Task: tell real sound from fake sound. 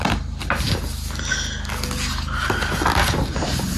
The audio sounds real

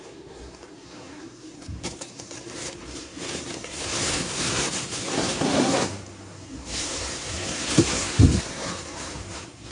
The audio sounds fake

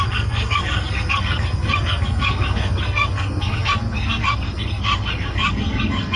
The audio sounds fake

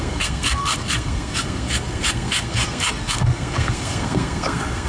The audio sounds fake